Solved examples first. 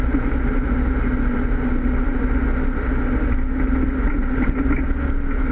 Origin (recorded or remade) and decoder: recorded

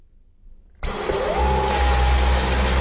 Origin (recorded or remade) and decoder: recorded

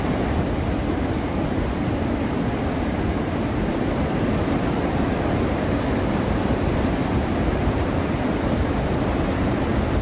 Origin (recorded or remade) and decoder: recorded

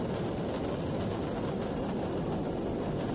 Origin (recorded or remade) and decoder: recorded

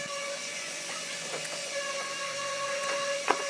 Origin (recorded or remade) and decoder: remade, vocoder, Vocos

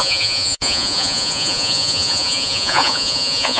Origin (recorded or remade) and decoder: remade, vocoder, Vocos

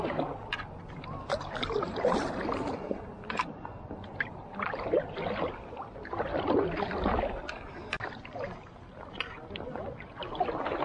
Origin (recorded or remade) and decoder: recorded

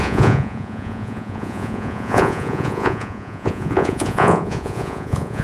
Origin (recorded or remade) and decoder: remade, vocoder, Vocos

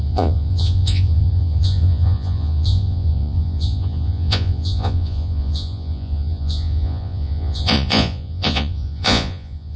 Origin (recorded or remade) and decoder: remade, vocoder, Vocos